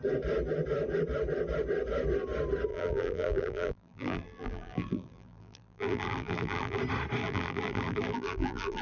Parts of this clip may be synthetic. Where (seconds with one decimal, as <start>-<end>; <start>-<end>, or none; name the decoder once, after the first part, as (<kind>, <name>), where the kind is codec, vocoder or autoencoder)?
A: 2.7-6.8 (vocoder, BigVGAN v2); 7.2-8.8